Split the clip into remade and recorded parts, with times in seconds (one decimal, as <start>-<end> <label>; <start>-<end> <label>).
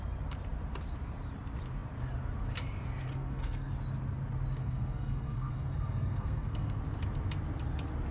0.0-3.1 recorded; 3.1-3.7 remade; 3.7-4.6 recorded; 4.6-6.8 remade; 6.8-8.1 recorded